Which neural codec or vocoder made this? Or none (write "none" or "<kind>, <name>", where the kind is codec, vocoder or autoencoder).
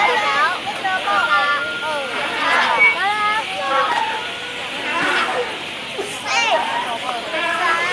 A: none